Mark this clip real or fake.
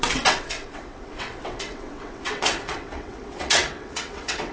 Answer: fake